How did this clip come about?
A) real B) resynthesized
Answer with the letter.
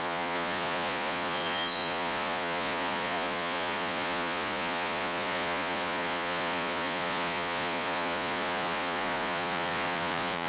B